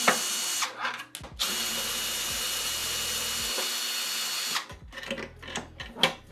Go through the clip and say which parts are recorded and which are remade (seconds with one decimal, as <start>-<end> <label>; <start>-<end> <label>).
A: 0.0-6.3 recorded